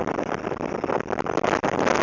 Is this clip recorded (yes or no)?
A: yes